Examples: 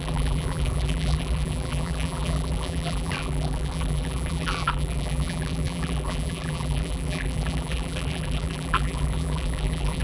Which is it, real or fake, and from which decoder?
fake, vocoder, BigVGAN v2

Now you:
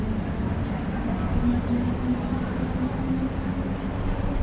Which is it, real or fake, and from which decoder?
real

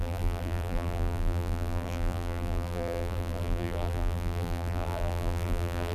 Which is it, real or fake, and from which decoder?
fake, vocoder, BigVGAN v2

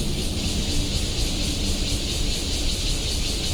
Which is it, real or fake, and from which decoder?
fake, vocoder, BigVGAN v2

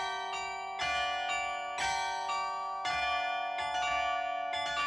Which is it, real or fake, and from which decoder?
real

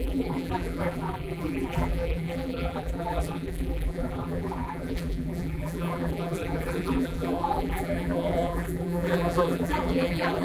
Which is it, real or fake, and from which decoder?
fake, vocoder, BigVGAN v2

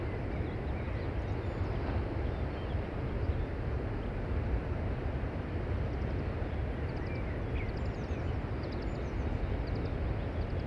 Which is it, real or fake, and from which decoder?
real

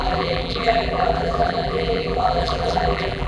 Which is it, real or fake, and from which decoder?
fake, vocoder, BigVGAN v2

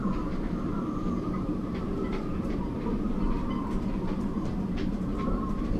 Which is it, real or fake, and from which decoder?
fake, vocoder, BigVGAN v2